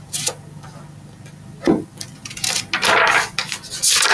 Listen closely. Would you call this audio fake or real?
real